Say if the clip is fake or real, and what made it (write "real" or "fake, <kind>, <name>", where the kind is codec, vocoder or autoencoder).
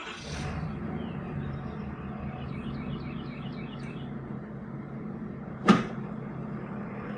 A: real